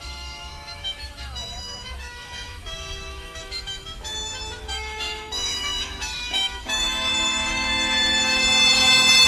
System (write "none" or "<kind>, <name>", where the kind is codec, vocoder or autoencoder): autoencoder, DAC-VAE